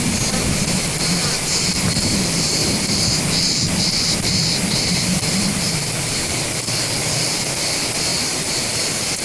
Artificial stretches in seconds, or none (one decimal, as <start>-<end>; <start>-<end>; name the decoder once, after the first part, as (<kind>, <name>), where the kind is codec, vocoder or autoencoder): 1.2-2.1 (vocoder, BigVGAN v2); 2.6-5.7; 8.1-8.6